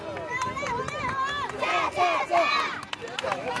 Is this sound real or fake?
real